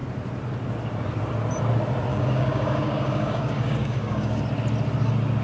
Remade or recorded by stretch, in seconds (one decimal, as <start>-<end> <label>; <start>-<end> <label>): 0.0-2.1 recorded; 2.1-4.4 remade; 4.4-5.4 recorded